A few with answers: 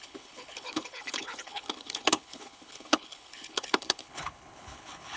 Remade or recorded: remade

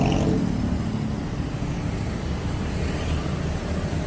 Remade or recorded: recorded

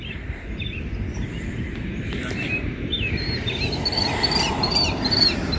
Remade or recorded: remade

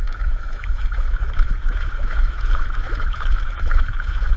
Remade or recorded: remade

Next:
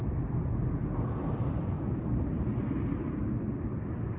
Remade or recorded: recorded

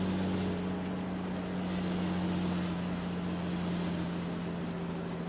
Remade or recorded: recorded